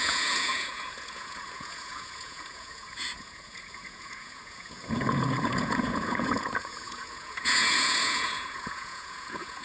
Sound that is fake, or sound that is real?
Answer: fake